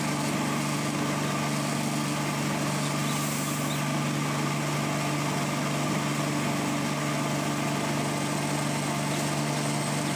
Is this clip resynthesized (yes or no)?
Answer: no